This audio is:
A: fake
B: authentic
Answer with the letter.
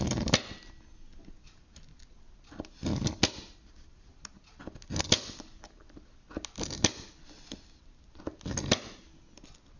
B